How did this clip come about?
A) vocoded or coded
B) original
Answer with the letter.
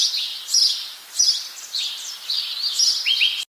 B